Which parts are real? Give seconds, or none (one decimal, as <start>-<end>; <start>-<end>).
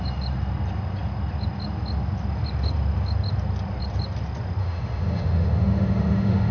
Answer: 0.0-4.6